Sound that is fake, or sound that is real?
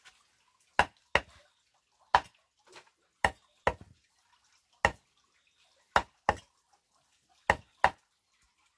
real